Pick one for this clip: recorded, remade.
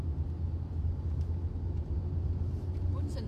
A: recorded